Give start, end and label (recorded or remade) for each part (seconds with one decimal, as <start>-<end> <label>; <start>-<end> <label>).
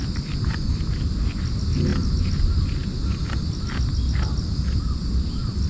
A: 0.0-5.7 recorded